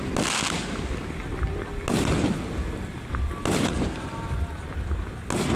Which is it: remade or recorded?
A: recorded